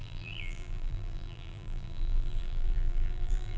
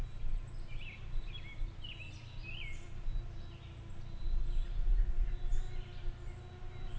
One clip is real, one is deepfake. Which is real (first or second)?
second